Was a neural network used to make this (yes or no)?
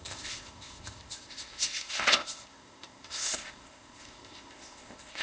yes